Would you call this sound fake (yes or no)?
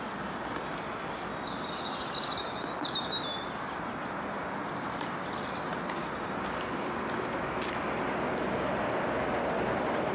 no